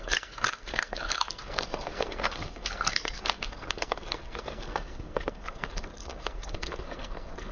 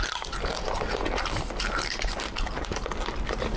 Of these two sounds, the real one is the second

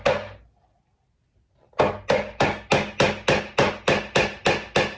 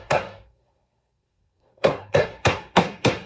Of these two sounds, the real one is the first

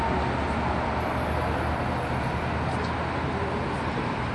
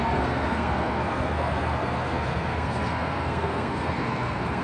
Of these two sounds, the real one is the first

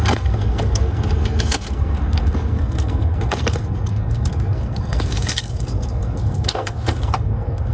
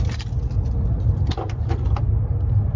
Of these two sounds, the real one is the second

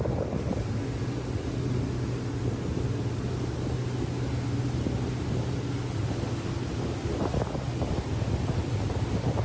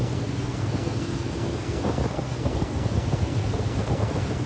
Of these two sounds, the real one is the first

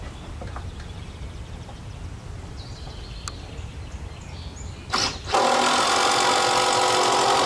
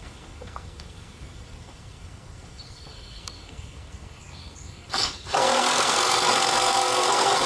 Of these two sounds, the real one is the first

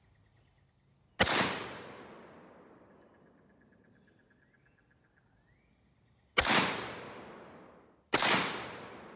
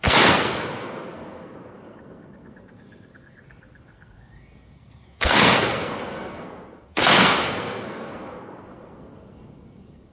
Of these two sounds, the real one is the first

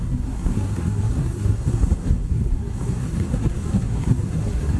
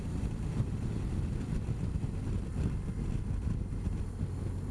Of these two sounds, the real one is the second